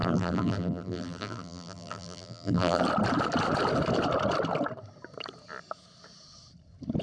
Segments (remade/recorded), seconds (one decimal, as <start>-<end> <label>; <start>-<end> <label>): 0.0-2.8 remade; 2.8-7.0 recorded